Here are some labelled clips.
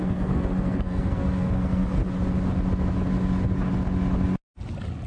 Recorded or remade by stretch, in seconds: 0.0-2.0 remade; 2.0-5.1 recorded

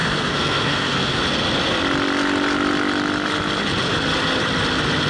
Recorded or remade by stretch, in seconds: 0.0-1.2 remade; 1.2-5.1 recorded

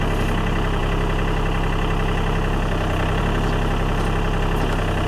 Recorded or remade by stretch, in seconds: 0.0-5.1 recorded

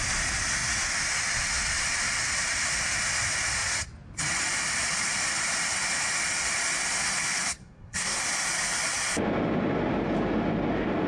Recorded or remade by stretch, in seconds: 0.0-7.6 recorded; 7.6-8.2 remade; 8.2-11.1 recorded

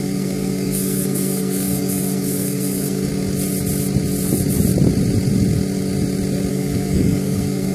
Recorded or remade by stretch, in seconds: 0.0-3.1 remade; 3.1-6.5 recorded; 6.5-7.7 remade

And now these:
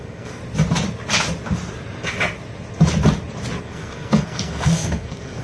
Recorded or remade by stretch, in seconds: 0.0-0.4 remade; 0.4-3.6 recorded; 3.6-5.4 remade